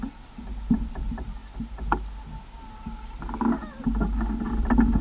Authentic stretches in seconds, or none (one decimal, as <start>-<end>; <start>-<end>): 0.0-5.0